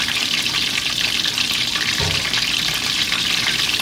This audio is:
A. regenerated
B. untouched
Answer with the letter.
A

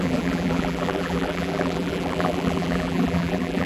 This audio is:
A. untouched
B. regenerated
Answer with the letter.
B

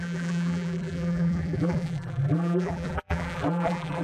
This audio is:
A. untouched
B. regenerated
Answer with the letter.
B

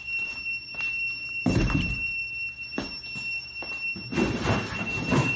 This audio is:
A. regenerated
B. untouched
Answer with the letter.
A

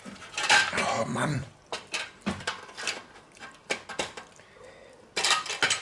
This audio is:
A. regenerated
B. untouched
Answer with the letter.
A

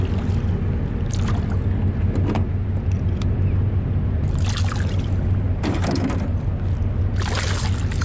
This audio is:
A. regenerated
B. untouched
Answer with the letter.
B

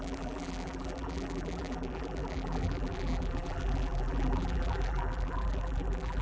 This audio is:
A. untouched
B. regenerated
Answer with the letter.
B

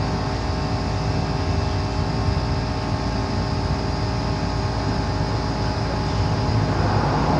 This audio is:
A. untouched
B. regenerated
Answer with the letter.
A